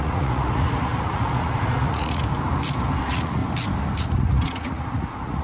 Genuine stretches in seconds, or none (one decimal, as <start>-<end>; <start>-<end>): 2.2-3.0; 3.4-4.0